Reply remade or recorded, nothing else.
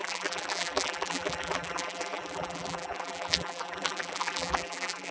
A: remade